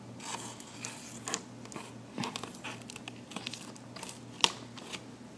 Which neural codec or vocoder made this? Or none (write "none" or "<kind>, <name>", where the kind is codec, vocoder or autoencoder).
none